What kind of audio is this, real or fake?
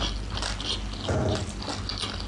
real